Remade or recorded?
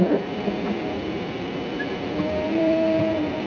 remade